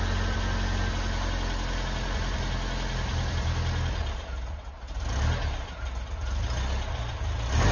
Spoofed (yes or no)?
no